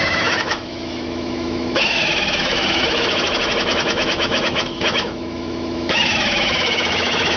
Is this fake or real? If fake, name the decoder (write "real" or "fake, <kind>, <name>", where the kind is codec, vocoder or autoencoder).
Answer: fake, autoencoder, DAC-VAE